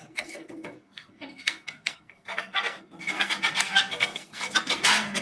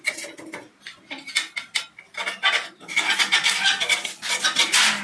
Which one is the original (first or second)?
second